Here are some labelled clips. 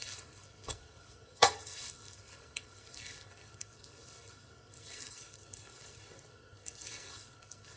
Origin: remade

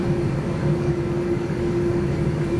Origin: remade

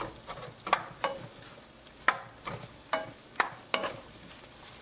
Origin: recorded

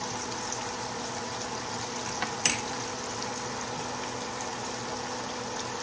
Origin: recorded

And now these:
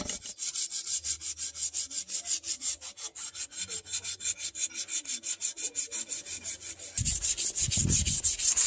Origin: recorded